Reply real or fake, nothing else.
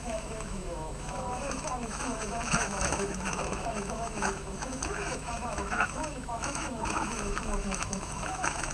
fake